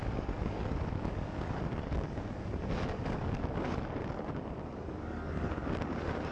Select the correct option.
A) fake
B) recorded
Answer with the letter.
A